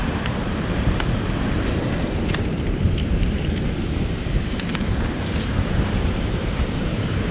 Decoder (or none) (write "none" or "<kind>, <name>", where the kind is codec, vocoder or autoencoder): vocoder, BigVGAN v2